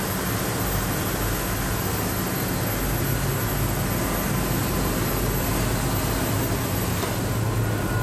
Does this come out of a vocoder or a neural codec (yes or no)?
no